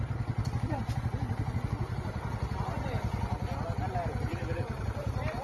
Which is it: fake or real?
fake